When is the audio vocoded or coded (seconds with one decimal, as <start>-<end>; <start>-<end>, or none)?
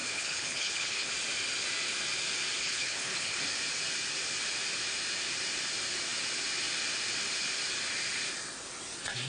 0.0-1.1; 2.6-3.4